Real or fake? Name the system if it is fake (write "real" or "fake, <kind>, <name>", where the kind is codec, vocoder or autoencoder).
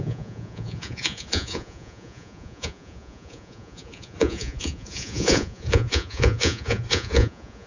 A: fake, vocoder, Vocos